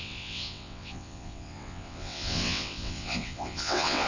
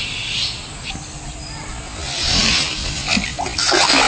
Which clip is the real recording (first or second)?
second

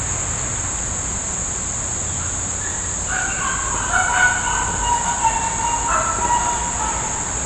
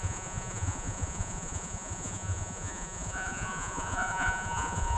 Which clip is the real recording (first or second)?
first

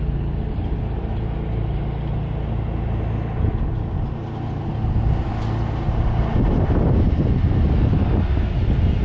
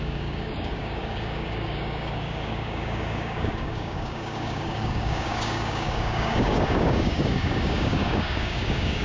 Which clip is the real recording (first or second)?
first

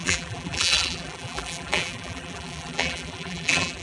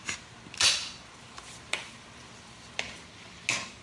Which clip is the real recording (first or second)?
second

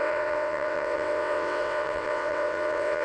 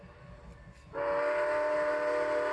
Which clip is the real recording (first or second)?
second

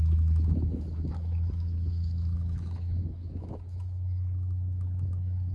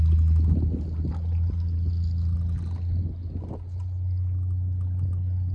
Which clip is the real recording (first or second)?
second